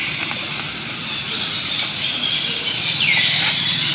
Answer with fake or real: real